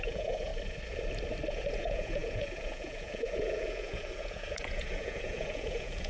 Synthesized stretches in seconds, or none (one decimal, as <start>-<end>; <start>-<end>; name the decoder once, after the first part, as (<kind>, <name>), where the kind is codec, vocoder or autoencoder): 0.0-0.5 (vocoder, Vocos); 1.5-6.1